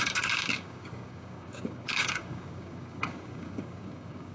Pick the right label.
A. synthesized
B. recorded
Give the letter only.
A